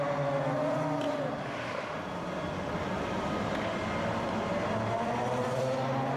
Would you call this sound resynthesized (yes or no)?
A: no